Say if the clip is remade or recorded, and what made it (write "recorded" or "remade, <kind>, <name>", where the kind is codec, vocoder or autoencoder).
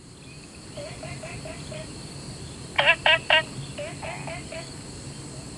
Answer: recorded